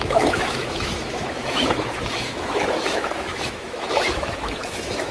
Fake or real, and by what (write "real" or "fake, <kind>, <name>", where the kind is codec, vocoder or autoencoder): fake, autoencoder, DAC-VAE